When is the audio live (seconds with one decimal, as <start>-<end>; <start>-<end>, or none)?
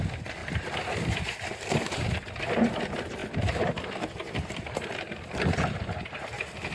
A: 0.0-0.4; 2.5-3.2; 5.1-6.7